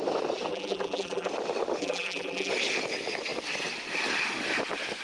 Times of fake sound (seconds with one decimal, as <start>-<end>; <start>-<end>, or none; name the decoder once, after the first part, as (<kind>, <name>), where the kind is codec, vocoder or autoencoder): 0.5-1.3 (vocoder, BigVGAN v2); 1.8-2.5